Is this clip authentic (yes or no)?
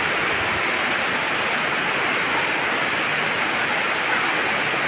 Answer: yes